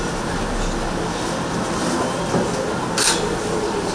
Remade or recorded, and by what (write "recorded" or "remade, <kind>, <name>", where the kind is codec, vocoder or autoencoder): recorded